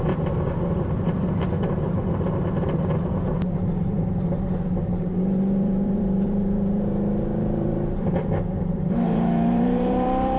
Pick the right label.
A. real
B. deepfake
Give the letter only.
B